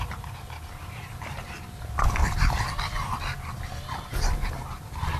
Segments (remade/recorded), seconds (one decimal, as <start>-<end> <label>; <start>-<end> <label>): 0.0-5.2 recorded